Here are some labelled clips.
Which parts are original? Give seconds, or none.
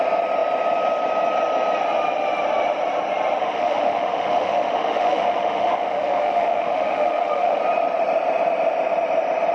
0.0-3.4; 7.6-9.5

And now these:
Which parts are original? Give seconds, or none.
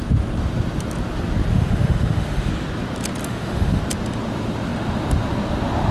0.0-1.5; 2.5-3.2; 3.8-5.9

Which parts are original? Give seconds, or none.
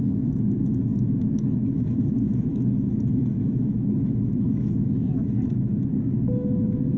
none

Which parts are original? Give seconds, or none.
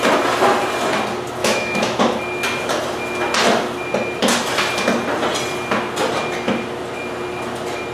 0.0-1.4; 2.0-7.9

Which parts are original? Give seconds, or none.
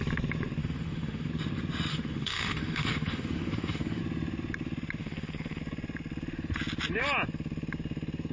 0.0-0.6; 1.3-1.9; 4.0-5.0; 5.6-8.3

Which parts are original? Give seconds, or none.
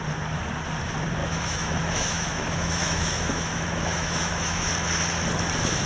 0.0-1.2; 4.7-5.9